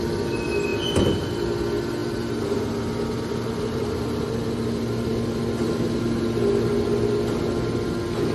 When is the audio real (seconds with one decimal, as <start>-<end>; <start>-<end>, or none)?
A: 0.0-8.3